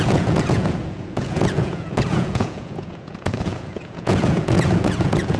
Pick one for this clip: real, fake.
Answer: fake